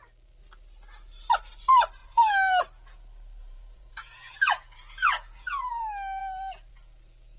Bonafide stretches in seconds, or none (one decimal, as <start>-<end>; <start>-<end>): 0.0-3.4; 5.8-7.4